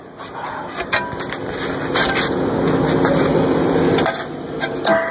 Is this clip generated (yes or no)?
no